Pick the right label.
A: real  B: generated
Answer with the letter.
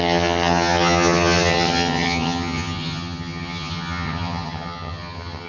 B